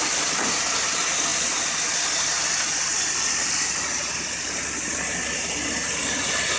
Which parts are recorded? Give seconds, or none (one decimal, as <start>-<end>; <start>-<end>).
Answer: 1.3-5.3